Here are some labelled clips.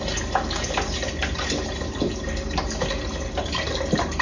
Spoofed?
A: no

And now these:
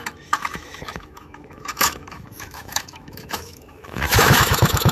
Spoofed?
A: yes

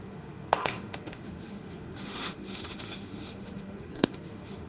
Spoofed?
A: yes